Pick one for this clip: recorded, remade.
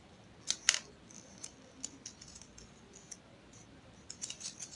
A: recorded